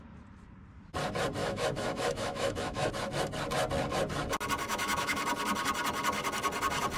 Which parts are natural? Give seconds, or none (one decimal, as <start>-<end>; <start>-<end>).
0.0-1.4; 2.9-4.7; 5.2-7.0